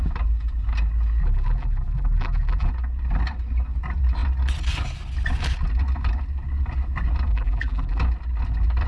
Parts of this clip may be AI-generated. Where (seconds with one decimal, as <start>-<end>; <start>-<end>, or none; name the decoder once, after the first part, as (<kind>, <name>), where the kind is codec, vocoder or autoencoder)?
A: 1.2-2.7 (vocoder, BigVGAN v2); 7.3-8.0